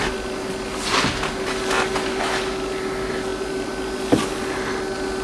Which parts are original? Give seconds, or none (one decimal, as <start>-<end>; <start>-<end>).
0.0-5.2